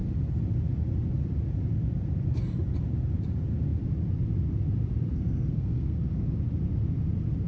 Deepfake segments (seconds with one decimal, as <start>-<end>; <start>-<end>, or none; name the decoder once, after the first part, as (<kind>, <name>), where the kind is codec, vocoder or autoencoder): 5.1-6.0 (codec, SNAC)